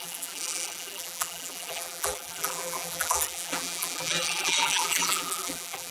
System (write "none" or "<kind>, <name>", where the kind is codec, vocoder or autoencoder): vocoder, BigVGAN v2